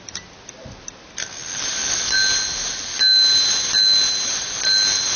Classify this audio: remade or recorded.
recorded